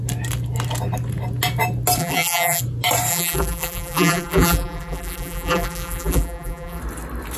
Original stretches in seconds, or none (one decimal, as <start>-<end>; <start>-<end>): 0.0-2.0; 2.6-3.1; 6.8-7.4